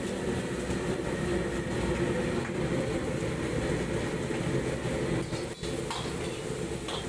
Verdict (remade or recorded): recorded